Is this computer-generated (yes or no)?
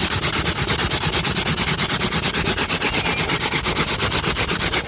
no